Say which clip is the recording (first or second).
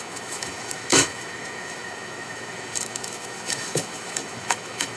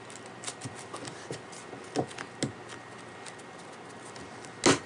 second